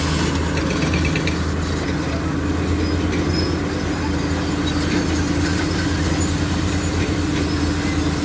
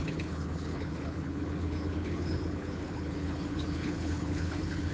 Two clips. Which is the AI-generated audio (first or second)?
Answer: second